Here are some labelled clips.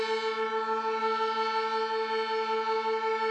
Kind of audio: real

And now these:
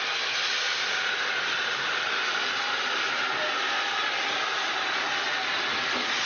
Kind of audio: real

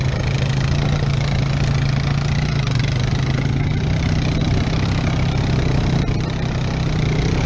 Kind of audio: real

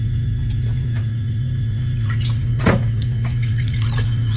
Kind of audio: fake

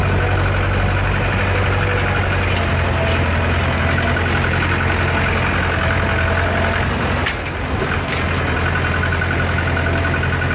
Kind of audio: real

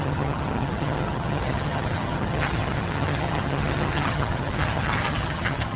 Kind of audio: fake